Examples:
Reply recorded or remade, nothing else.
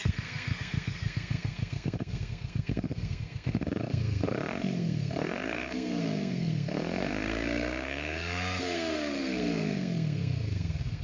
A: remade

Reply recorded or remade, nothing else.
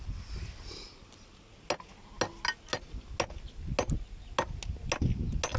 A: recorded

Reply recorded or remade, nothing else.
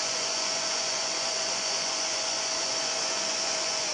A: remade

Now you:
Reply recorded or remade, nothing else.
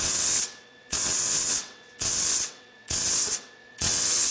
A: remade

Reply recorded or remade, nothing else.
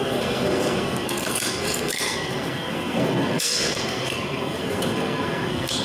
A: remade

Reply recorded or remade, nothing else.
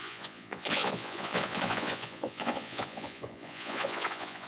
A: remade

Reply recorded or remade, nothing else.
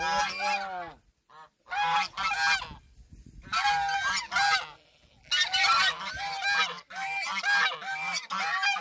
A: recorded